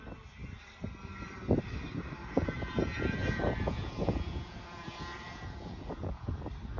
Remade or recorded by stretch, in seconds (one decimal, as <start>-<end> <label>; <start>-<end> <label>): 0.0-2.2 recorded; 2.2-6.3 remade; 6.3-6.8 recorded